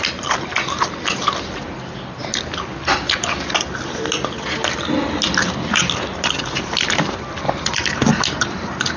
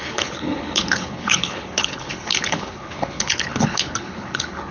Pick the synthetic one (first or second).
second